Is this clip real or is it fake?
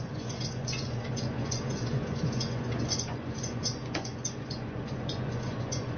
fake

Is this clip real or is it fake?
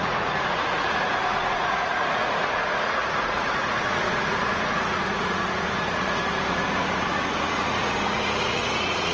fake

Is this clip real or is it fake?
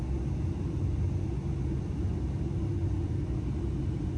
real